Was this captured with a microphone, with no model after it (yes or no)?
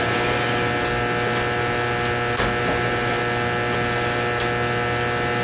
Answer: yes